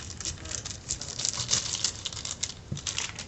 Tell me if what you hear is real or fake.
real